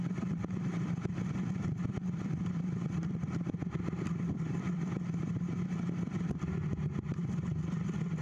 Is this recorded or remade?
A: remade